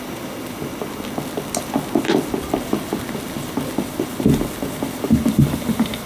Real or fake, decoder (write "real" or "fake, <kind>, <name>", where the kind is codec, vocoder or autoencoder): real